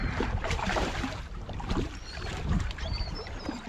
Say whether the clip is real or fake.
fake